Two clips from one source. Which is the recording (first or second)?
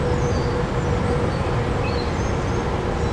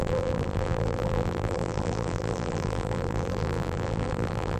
first